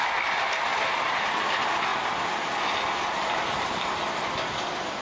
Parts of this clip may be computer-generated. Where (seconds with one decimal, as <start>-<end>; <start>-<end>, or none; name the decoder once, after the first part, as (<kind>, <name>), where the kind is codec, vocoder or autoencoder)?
none